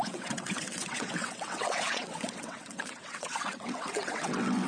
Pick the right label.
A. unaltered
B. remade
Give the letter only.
B